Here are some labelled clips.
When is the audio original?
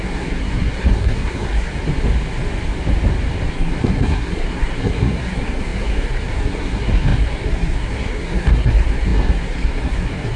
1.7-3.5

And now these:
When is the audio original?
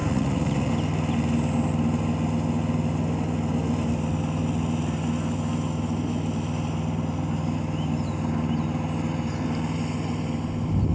0.7-10.9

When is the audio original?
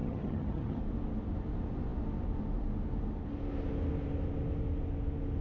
0.8-5.4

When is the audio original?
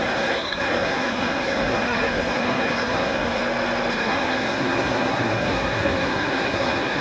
3.4-3.9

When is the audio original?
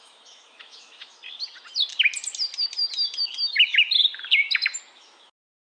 1.2-3.2; 4.0-4.8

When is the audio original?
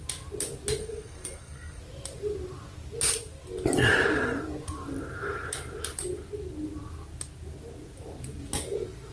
0.0-0.8; 1.8-9.1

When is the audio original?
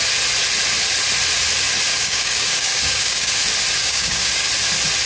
0.0-1.9; 3.3-3.8; 4.5-5.1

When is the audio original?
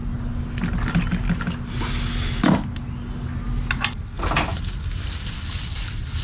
0.0-3.7